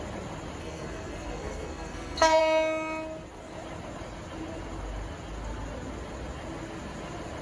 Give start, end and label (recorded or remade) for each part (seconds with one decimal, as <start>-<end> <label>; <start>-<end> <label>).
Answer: 0.0-0.6 recorded; 0.6-2.4 remade; 2.4-7.4 recorded